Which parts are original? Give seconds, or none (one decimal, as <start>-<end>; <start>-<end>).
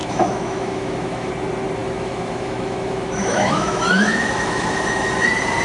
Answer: 1.3-1.8; 5.1-5.6